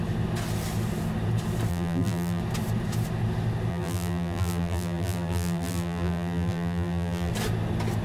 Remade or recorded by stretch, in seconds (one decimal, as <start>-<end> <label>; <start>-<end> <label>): 0.0-1.7 recorded; 1.7-2.4 remade; 2.4-3.7 recorded; 3.7-7.3 remade; 7.3-8.0 recorded